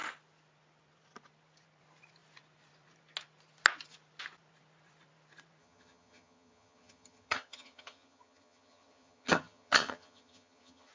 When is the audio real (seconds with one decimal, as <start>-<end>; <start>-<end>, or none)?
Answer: 0.0-5.6